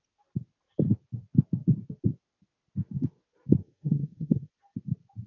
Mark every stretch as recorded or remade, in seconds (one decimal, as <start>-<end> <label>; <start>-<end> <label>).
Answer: 0.0-3.6 recorded; 3.6-4.5 remade; 4.5-5.3 recorded